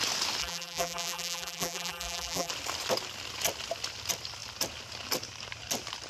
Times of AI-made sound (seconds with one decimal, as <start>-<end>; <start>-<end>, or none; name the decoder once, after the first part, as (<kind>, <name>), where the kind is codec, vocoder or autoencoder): 0.4-2.5 (vocoder, BigVGAN v2)